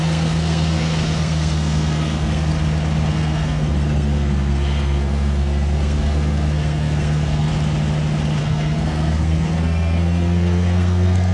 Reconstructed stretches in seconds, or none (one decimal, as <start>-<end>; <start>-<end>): 0.0-2.5; 3.1-7.5; 8.4-11.3